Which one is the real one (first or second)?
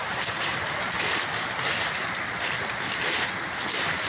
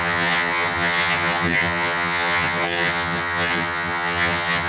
first